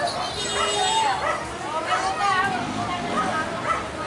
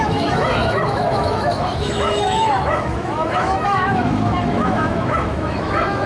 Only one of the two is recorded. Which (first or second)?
first